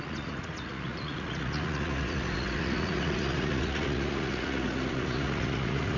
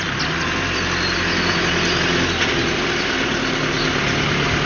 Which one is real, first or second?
second